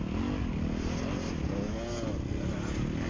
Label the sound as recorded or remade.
recorded